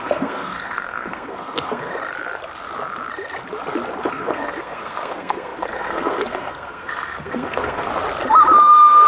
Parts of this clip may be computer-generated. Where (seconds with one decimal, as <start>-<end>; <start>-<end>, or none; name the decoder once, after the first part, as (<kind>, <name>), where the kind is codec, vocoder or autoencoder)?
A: 0.0-1.9 (codec, SNAC); 4.0-7.9; 8.6-9.1